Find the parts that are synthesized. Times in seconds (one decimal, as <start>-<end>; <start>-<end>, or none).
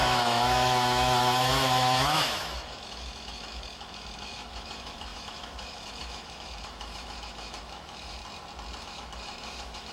0.0-8.2; 8.8-9.9